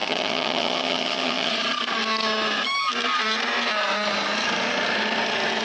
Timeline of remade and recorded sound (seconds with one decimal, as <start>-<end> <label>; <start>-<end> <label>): 0.0-1.5 remade; 1.5-5.6 recorded